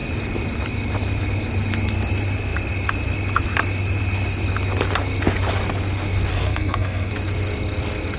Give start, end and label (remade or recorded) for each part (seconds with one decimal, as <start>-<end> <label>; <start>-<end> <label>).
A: 0.0-6.3 recorded; 6.3-7.1 remade; 7.1-8.2 recorded